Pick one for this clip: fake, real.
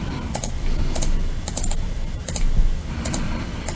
real